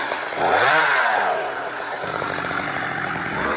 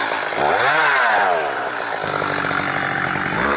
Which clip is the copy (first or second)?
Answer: first